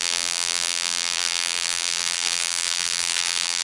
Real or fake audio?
fake